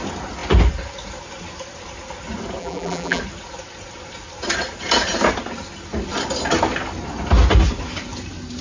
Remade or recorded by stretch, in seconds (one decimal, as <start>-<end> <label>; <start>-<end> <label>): 0.0-2.6 recorded; 2.6-3.2 remade; 3.2-8.6 recorded